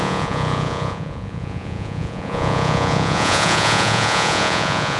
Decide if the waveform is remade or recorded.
remade